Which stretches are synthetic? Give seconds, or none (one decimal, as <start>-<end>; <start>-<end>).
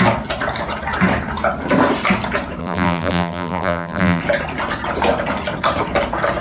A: 2.6-4.2